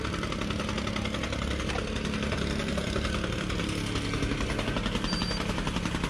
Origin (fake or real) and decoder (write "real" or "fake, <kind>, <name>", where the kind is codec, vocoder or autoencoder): real